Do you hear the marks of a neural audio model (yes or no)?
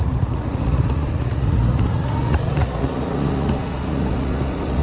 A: yes